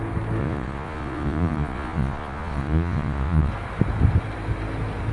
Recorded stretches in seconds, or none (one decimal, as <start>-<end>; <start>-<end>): 0.0-0.4; 3.5-5.1